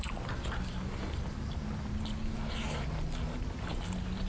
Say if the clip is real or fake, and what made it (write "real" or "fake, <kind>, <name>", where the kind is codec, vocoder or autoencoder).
real